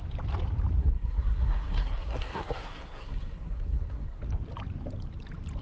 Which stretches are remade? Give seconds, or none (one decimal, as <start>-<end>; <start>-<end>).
0.8-4.2